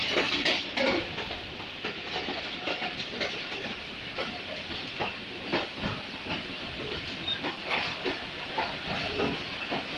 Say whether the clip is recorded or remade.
remade